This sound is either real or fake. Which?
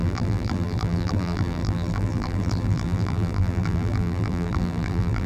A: fake